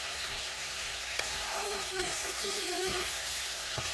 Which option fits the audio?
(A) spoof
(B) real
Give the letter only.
A